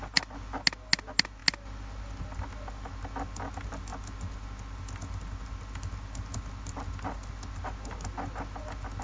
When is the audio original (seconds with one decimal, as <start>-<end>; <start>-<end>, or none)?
0.0-9.0